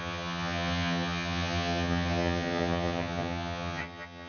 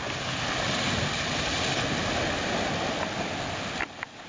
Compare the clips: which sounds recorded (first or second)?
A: second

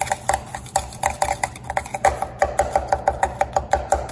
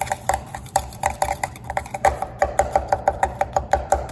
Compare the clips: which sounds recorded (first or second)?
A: first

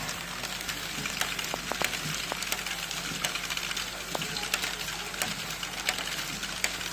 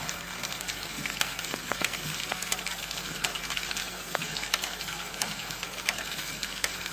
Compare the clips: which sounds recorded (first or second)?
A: first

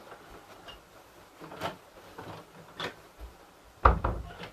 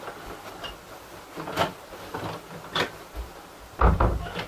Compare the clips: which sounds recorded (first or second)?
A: second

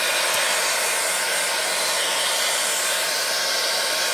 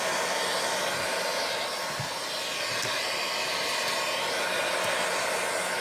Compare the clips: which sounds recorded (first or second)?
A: second